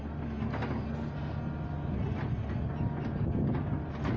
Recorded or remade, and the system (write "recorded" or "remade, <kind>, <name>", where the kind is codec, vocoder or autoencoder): recorded